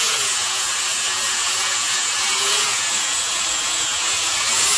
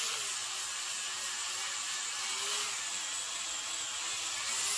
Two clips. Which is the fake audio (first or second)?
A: first